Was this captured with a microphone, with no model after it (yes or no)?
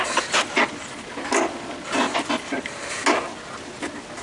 yes